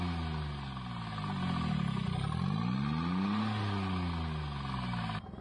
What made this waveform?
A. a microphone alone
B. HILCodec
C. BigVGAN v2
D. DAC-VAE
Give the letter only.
A